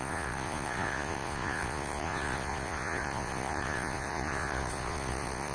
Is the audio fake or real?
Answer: fake